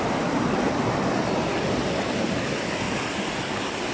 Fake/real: real